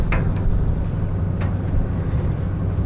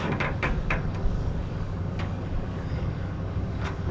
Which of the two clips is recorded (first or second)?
first